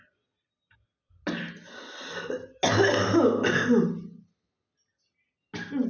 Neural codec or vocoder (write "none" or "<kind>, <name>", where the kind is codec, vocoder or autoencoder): none